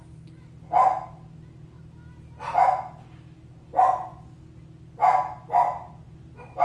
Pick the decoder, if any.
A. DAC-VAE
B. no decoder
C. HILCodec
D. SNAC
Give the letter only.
B